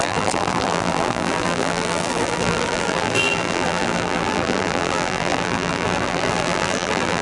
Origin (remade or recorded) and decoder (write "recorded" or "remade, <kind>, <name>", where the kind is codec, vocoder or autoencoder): remade, vocoder, BigVGAN v2